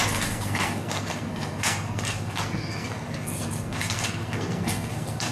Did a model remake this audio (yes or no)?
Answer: yes